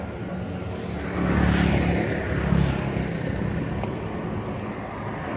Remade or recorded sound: recorded